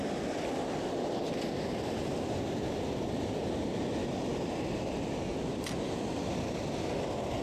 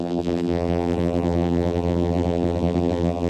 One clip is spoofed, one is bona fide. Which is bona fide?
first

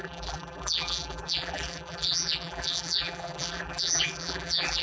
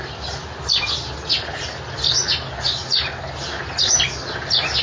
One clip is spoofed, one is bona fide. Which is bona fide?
second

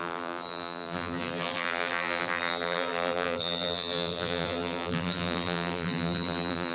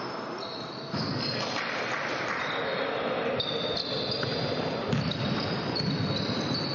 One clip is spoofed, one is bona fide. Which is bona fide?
second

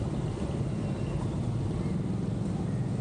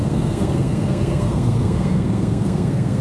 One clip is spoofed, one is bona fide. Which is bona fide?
first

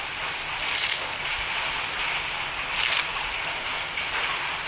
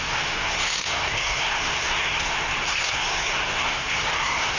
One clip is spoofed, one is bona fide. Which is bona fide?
first